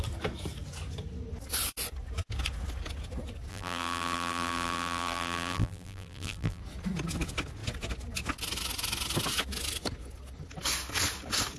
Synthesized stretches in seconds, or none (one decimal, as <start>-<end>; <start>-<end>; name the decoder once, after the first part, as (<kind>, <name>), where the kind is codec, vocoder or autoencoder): 3.5-6.6 (vocoder, BigVGAN v2)